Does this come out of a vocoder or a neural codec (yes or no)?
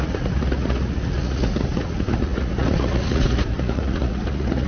yes